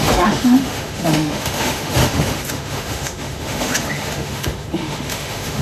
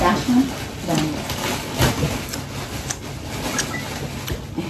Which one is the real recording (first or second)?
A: second